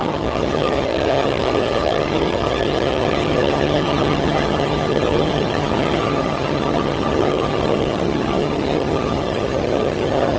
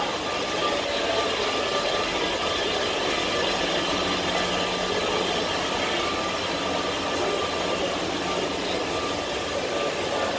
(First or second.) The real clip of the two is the second